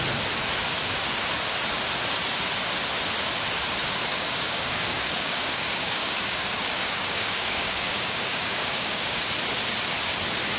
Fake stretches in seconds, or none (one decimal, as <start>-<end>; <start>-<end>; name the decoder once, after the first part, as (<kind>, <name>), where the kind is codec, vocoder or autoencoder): 4.1-9.2 (codec, DAC)